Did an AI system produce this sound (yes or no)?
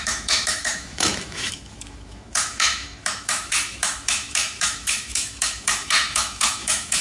yes